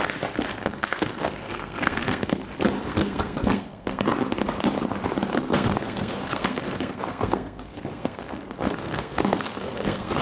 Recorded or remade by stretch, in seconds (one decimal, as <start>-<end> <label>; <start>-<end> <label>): 0.0-0.6 recorded; 0.6-2.4 remade; 2.4-2.9 recorded; 2.9-4.0 remade; 4.0-5.3 recorded; 5.3-10.2 remade